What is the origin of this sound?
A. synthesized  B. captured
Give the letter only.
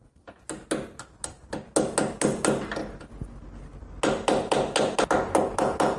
B